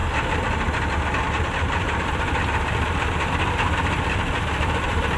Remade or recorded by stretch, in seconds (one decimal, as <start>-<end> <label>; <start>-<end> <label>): 0.0-5.2 recorded